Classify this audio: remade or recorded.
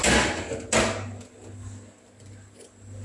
recorded